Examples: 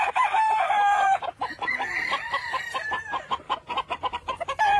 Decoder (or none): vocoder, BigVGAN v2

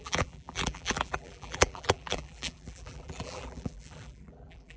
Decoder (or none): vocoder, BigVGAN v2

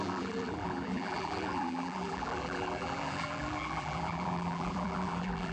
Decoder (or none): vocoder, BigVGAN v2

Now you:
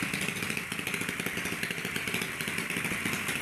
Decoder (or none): none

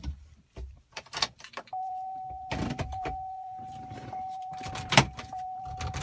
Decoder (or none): vocoder, BigVGAN v2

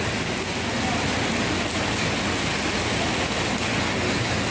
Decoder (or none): none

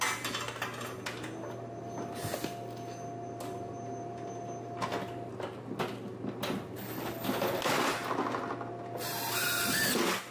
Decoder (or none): none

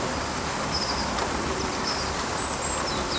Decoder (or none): vocoder, BigVGAN v2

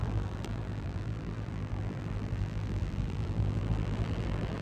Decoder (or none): vocoder, BigVGAN v2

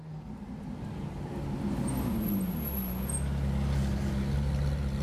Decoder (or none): none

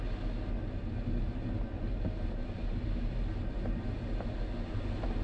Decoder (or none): none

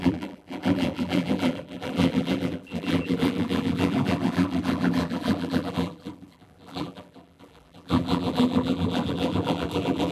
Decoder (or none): vocoder, BigVGAN v2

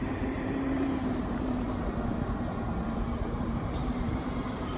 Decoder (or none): vocoder, BigVGAN v2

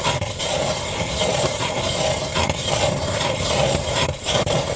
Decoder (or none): vocoder, BigVGAN v2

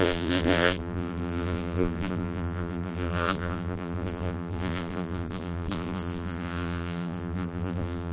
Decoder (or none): vocoder, BigVGAN v2